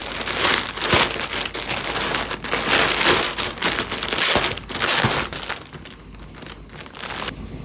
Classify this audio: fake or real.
real